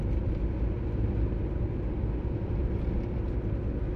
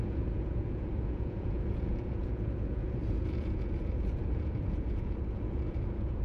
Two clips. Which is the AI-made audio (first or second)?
second